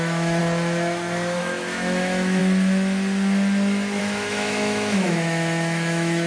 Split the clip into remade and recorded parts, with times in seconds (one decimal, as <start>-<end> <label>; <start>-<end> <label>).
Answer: 0.0-0.4 remade; 0.4-1.4 recorded; 1.4-2.4 remade; 2.4-4.0 recorded; 4.0-6.3 remade